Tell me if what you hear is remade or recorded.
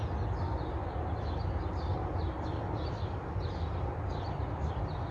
recorded